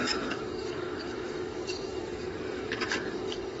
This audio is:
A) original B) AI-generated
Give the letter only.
B